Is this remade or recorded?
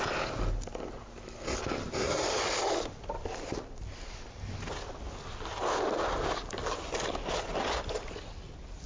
recorded